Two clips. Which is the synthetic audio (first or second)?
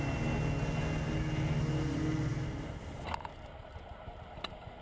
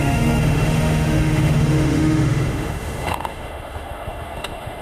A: second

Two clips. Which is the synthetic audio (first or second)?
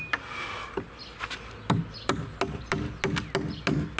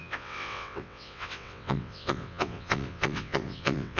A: second